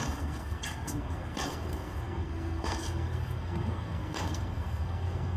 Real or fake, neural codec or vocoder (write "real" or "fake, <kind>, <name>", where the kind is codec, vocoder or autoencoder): fake, codec, SNAC